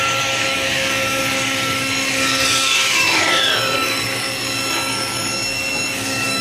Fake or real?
fake